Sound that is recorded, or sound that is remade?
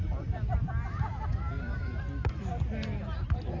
recorded